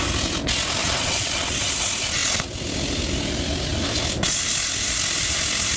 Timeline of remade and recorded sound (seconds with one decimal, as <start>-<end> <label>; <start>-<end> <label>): 0.0-0.8 recorded; 0.8-1.7 remade; 1.7-5.8 recorded